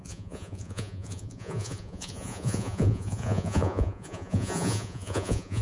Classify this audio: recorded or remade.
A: remade